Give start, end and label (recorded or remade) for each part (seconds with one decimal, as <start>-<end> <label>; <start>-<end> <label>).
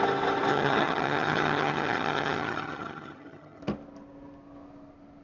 0.0-0.5 recorded; 0.5-3.6 remade; 3.6-5.2 recorded